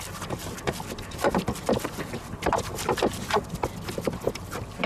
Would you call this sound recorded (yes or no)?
yes